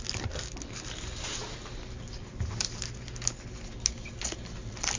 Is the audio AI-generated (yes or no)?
no